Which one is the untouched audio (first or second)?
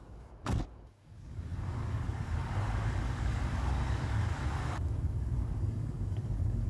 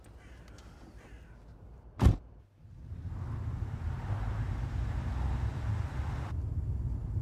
second